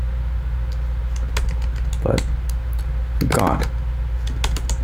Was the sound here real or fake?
real